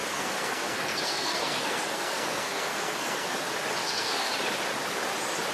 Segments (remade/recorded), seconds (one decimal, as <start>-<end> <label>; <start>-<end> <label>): 0.0-3.3 remade; 3.3-3.8 recorded; 3.8-4.3 remade; 4.3-5.5 recorded

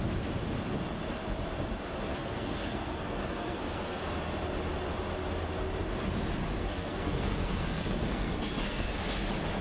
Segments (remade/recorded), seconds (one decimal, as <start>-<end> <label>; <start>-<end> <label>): 0.0-2.1 recorded; 2.1-4.0 remade; 4.0-6.4 recorded; 6.4-8.9 remade; 8.9-9.6 recorded

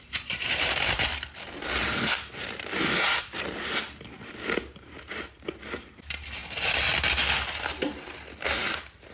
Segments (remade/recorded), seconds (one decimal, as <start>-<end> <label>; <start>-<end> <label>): 0.0-6.4 remade; 6.4-7.6 recorded; 7.6-9.1 remade

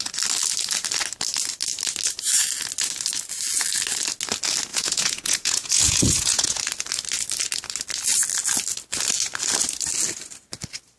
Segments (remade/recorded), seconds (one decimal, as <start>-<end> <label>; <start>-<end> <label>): 0.0-4.7 recorded; 4.7-6.6 remade; 6.6-11.0 recorded

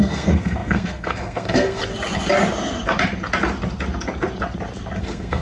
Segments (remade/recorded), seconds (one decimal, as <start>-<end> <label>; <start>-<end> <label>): 0.0-1.8 remade; 1.8-5.0 recorded; 5.0-5.4 remade

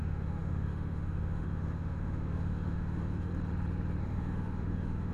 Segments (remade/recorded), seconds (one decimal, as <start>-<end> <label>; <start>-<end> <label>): 0.0-3.3 remade; 3.3-4.0 recorded; 4.0-5.1 remade

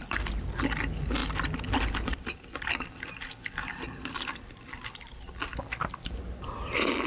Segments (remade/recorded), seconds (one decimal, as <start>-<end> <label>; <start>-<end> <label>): 0.0-7.1 recorded

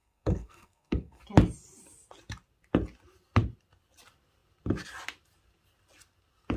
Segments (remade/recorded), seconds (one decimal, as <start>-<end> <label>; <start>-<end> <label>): 0.0-1.2 remade; 1.2-6.6 recorded